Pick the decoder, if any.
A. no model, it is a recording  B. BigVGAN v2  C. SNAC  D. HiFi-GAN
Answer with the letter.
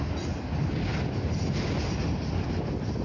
A